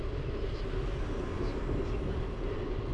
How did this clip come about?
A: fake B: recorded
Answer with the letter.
B